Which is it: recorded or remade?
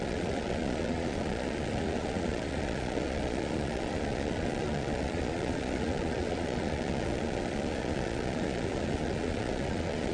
remade